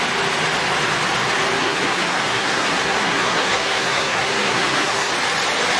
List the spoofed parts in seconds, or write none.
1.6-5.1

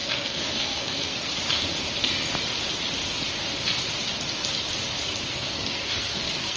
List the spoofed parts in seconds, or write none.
0.0-1.3; 5.3-6.6